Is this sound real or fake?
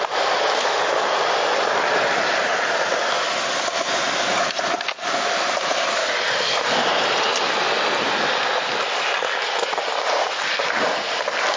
real